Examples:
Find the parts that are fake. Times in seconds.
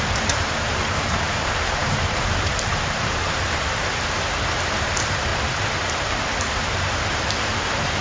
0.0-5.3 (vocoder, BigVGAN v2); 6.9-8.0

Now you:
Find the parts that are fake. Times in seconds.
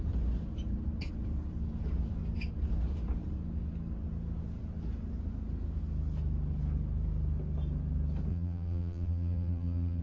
8.3-10.0 (vocoder, BigVGAN v2)